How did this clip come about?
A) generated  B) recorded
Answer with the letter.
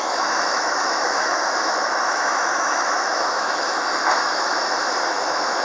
A